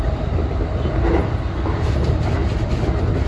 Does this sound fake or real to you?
fake